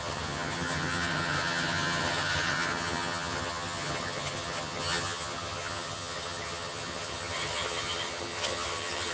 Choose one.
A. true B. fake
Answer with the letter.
B